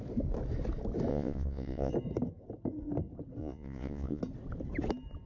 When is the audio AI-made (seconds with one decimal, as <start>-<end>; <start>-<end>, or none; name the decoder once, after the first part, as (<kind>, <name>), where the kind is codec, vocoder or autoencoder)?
1.1-1.9 (vocoder, Vocos); 3.4-4.2